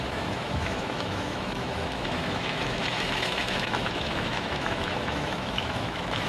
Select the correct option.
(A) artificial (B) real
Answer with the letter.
A